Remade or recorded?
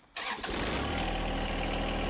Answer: recorded